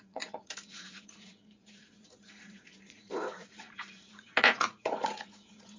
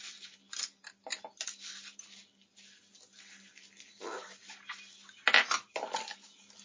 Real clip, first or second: second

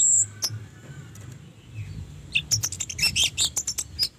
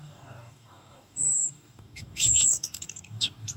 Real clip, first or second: first